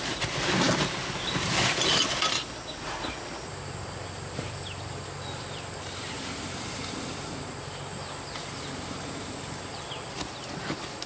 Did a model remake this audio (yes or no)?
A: no